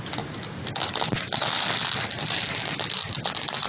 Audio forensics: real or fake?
real